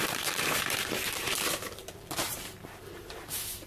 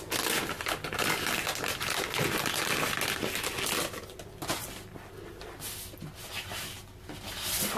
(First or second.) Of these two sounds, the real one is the second